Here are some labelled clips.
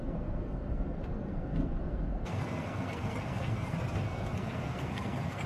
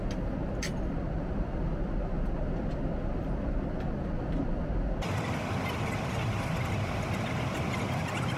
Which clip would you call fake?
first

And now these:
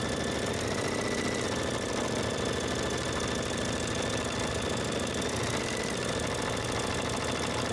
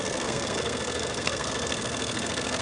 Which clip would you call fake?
second